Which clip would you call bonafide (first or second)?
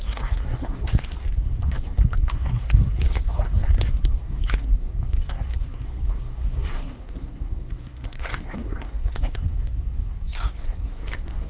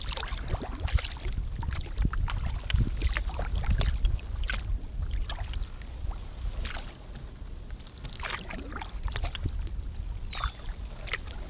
second